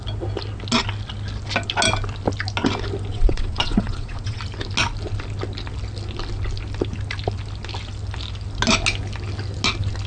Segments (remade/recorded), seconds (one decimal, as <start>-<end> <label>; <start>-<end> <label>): 0.0-3.1 recorded; 3.1-4.4 remade; 4.4-10.1 recorded